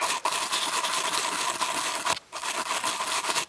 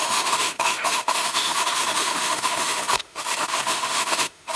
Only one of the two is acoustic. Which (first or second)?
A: first